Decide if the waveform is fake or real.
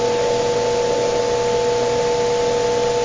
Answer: real